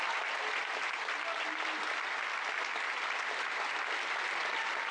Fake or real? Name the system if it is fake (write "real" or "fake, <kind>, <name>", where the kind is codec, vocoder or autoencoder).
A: real